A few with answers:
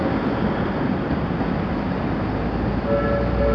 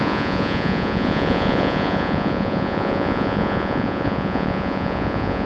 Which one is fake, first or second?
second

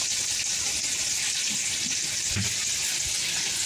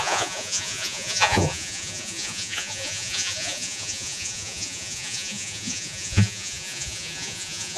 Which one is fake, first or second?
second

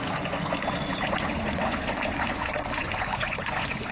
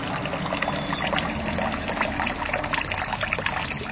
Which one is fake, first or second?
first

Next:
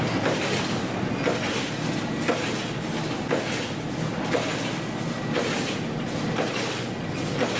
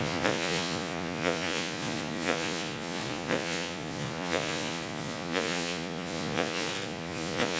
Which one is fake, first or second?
second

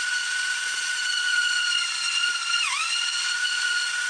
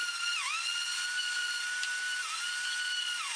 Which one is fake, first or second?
first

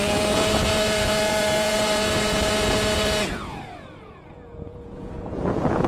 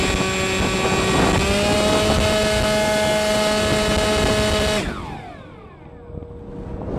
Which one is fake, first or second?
first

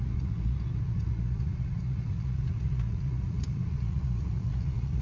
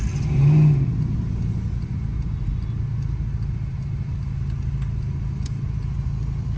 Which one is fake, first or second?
first